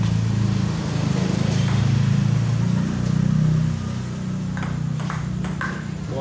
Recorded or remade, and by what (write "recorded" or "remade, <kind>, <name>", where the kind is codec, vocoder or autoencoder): recorded